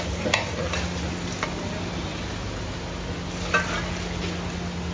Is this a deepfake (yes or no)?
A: no